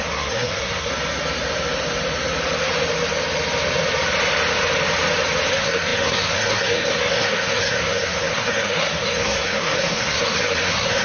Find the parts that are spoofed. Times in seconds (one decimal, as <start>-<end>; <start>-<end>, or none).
0.0-0.9; 5.5-11.0